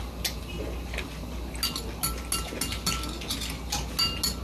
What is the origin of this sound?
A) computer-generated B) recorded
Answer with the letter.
B